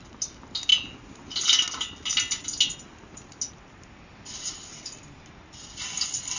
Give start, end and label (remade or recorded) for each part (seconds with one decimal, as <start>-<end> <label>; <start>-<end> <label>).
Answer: 0.0-6.4 recorded